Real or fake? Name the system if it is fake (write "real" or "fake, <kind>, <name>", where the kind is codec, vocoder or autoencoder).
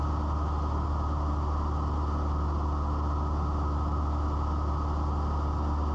real